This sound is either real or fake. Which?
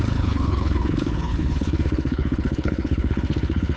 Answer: fake